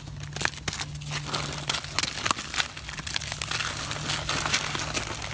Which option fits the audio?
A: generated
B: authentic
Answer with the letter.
B